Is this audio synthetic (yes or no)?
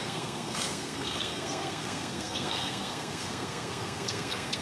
yes